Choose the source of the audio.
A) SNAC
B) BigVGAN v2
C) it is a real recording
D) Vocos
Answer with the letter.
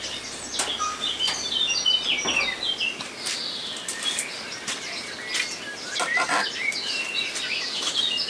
C